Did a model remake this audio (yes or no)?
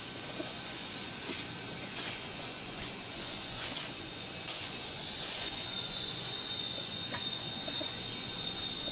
yes